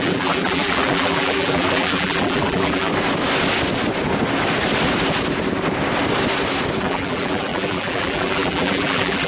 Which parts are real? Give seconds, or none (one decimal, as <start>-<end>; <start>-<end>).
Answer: 2.9-6.8